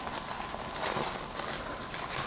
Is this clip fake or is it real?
real